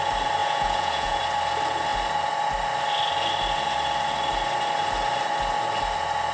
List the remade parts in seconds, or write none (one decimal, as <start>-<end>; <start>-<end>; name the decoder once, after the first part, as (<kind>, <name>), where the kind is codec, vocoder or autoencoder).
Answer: 0.4-1.2 (vocoder, Vocos)